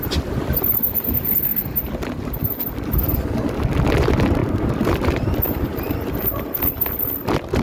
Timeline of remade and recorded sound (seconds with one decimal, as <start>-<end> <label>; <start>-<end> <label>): 0.0-4.4 recorded; 4.4-6.9 remade; 6.9-7.6 recorded